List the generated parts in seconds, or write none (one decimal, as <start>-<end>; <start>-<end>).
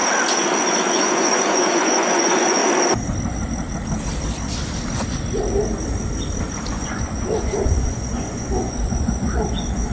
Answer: 0.9-2.6; 6.7-9.9